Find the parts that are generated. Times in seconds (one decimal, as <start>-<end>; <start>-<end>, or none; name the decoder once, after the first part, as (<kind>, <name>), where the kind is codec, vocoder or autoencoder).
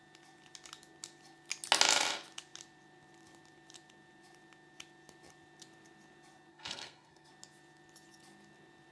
6.5-7.3 (codec, SNAC)